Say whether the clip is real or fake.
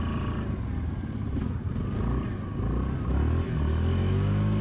real